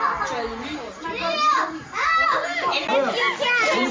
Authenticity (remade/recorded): recorded